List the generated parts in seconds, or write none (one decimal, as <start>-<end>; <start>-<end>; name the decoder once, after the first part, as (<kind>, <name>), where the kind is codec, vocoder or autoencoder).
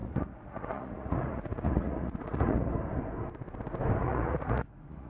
0.0-2.7 (vocoder, Vocos); 4.0-5.1